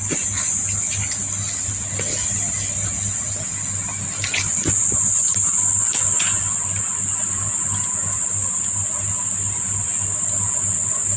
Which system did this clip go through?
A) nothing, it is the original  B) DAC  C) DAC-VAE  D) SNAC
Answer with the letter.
A